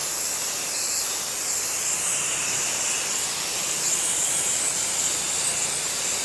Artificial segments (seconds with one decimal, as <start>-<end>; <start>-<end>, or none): none